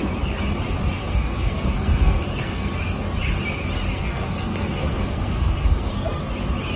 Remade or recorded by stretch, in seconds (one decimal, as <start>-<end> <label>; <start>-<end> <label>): 0.0-1.0 recorded; 1.0-2.7 remade; 2.7-3.9 recorded; 3.9-6.2 remade; 6.2-6.8 recorded